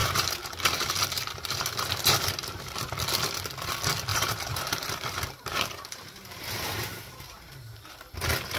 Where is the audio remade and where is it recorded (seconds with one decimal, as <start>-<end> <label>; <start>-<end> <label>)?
0.0-2.9 remade; 2.9-4.1 recorded; 4.1-7.5 remade; 7.5-8.6 recorded